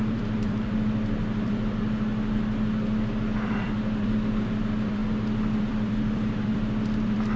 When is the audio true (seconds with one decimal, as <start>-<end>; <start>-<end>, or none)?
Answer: 2.1-3.0; 5.0-5.6